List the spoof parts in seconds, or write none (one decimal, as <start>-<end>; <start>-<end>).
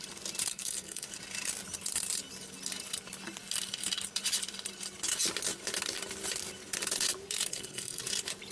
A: 0.5-1.1; 7.5-8.0